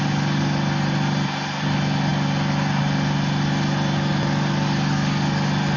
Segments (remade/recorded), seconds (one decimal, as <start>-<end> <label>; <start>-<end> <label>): 0.0-5.8 recorded

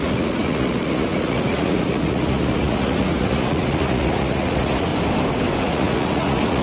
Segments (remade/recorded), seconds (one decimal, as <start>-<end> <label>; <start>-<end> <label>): 0.0-4.9 remade; 4.9-5.6 recorded; 5.6-6.6 remade

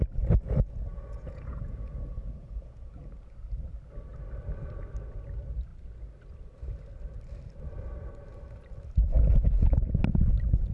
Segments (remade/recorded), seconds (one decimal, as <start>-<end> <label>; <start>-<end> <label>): 0.0-0.9 recorded; 0.9-2.9 remade; 2.9-10.7 recorded

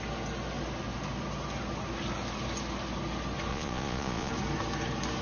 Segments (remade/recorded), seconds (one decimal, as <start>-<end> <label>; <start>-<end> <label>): 0.0-3.5 recorded; 3.5-4.3 remade; 4.3-5.2 recorded

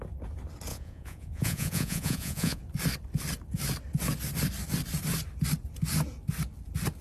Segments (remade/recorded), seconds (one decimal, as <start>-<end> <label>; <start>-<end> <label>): 0.0-0.7 recorded; 0.7-2.6 remade; 2.6-7.0 recorded